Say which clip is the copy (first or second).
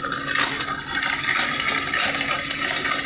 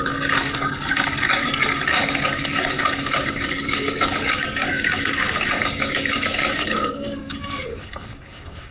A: second